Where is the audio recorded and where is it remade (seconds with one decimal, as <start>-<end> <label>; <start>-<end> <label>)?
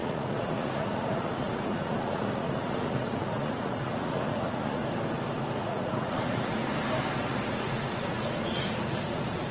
0.0-4.8 remade; 4.8-5.6 recorded; 5.6-6.6 remade; 6.6-7.2 recorded; 7.2-9.5 remade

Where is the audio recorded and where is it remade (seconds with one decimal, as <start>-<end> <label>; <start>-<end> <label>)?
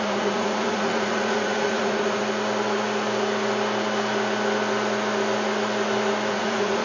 0.0-2.2 remade; 2.2-6.3 recorded; 6.3-6.8 remade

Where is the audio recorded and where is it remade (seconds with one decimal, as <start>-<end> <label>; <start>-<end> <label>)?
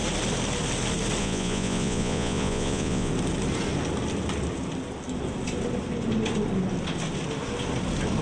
0.0-1.2 recorded; 1.2-3.1 remade; 3.1-8.2 recorded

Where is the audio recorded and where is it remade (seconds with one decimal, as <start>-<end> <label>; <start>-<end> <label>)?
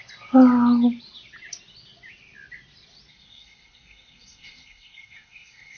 0.0-3.1 recorded; 3.1-5.8 remade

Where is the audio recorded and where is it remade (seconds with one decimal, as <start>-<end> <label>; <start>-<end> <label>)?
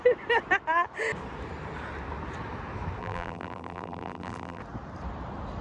0.0-3.0 recorded; 3.0-4.6 remade; 4.6-5.6 recorded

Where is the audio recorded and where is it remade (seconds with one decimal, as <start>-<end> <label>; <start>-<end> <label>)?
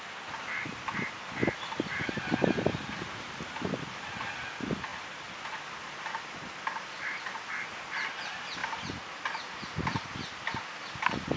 0.0-11.4 recorded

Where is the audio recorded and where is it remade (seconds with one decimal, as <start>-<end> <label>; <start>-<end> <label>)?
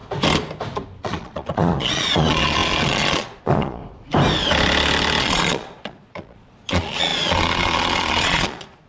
0.0-1.0 recorded; 1.0-3.8 remade; 3.8-5.2 recorded; 5.2-8.9 remade